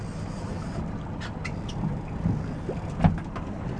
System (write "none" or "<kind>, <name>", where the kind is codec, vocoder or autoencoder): none